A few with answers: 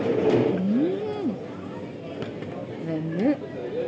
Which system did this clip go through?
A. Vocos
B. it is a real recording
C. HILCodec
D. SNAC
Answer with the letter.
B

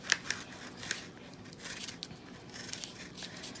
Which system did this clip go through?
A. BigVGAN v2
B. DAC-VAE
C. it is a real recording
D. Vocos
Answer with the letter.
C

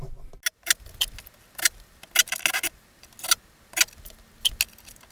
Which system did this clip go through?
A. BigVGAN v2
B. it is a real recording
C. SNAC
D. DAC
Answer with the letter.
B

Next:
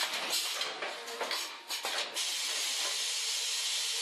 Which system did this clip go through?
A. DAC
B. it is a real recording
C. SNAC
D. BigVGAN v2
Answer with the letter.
B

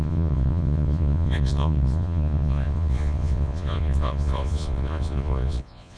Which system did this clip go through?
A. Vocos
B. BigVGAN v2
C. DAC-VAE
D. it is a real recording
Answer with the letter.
A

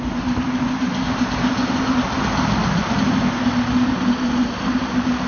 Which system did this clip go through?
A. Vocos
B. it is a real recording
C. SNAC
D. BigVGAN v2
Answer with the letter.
B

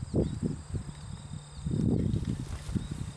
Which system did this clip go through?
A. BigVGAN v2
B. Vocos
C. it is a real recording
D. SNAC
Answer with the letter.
C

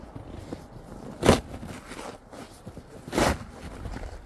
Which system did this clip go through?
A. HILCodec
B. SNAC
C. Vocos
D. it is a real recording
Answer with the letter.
D